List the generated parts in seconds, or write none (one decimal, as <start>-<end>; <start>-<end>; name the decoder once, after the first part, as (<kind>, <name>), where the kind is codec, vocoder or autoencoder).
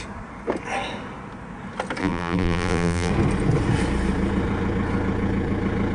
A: 2.0-3.1 (vocoder, BigVGAN v2)